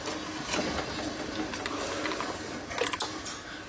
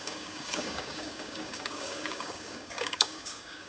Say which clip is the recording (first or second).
first